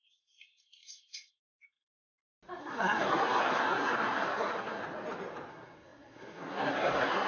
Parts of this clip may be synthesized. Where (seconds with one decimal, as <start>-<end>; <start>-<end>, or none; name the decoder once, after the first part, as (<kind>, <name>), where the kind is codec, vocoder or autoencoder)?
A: 0.0-2.1 (codec, SNAC); 2.6-4.8; 5.5-7.3